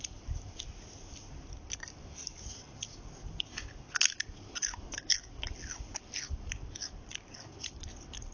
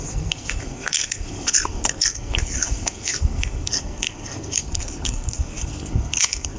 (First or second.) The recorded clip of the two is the first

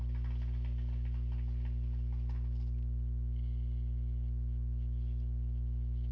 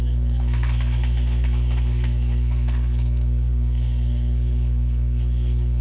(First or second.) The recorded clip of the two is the first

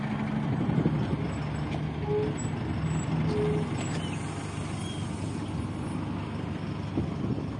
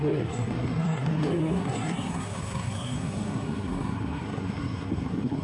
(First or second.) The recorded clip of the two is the first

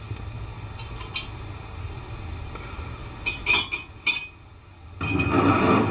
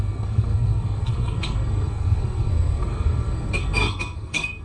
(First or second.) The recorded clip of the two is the first